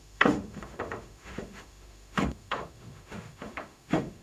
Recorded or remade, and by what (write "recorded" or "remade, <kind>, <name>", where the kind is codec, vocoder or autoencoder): remade, autoencoder, DAC-VAE